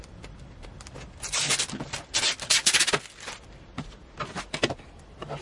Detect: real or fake real